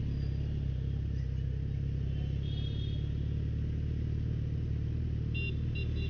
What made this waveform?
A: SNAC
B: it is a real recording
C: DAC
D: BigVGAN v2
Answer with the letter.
B